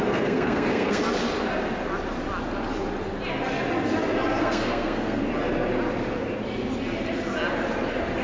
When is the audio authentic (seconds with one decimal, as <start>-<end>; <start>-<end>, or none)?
1.0-4.4; 5.2-8.2